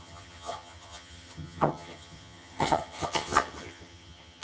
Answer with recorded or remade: remade